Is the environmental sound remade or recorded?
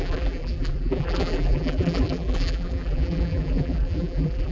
remade